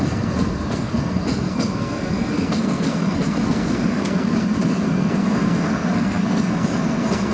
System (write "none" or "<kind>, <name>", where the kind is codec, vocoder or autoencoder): codec, SNAC